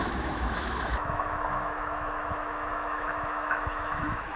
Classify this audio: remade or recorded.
remade